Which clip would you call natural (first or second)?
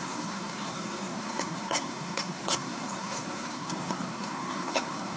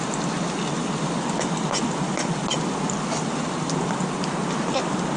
second